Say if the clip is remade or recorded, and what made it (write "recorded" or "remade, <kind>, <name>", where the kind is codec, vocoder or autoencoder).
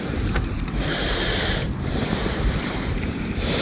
remade, vocoder, BigVGAN v2